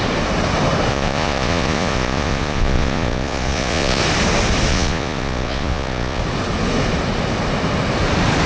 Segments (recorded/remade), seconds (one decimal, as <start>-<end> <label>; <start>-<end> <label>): 0.0-0.9 recorded; 0.9-4.0 remade; 4.0-4.7 recorded; 4.7-6.2 remade; 6.2-8.5 recorded